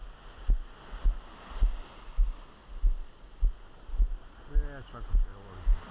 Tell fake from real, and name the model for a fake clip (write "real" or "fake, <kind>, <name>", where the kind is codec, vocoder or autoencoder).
real